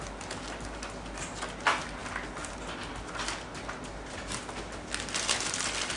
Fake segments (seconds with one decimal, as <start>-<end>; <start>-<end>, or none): none